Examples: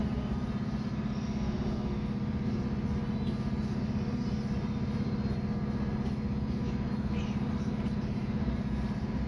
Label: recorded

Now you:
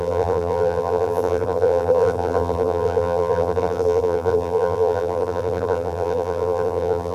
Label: remade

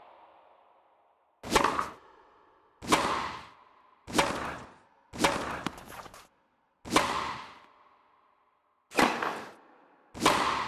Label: recorded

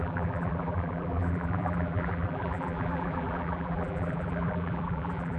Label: remade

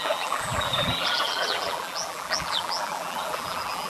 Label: remade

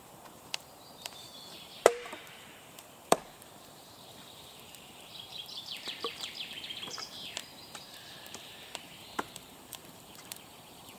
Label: remade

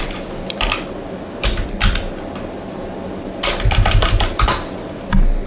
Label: recorded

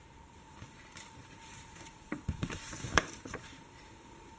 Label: remade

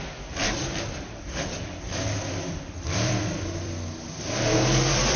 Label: remade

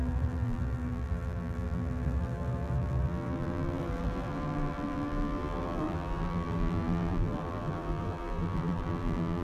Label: remade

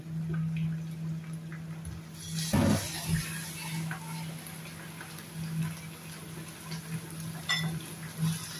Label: recorded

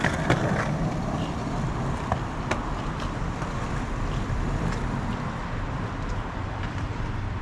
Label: remade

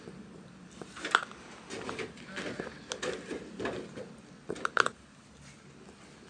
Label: recorded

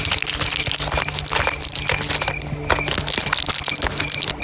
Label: recorded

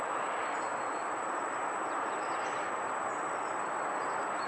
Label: remade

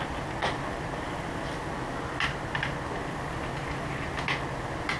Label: recorded